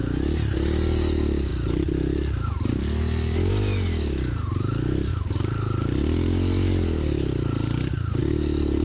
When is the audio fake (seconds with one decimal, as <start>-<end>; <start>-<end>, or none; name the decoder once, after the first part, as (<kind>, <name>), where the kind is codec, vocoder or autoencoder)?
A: none